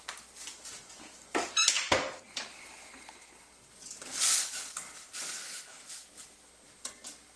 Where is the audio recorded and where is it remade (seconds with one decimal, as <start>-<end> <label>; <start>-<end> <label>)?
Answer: 0.0-5.4 recorded; 5.4-6.5 remade; 6.5-7.4 recorded